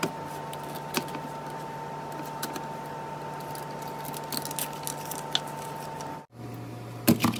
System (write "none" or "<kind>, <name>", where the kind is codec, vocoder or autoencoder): none